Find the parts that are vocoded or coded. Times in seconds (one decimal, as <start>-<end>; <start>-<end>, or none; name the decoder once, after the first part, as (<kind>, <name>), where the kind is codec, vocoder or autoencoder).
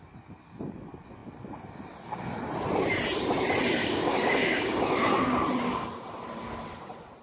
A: 3.8-5.2 (codec, DAC)